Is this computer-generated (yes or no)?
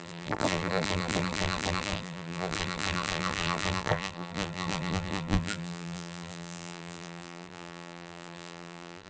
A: yes